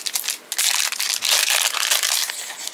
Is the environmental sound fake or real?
real